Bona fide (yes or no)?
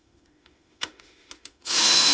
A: no